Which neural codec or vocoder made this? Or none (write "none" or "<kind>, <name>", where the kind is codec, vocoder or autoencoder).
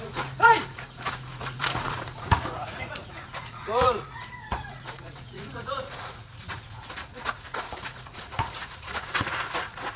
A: vocoder, Vocos